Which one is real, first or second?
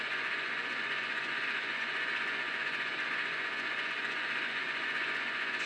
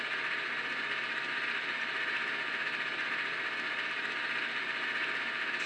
second